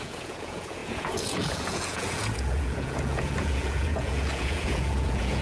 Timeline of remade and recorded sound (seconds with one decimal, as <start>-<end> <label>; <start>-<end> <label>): 0.0-5.4 remade